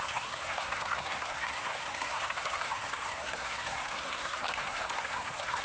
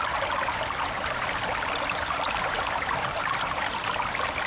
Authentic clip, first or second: second